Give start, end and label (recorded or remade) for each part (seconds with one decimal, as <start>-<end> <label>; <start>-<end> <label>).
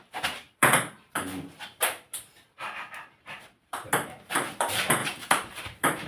0.0-1.3 remade; 1.3-3.3 recorded; 3.3-6.1 remade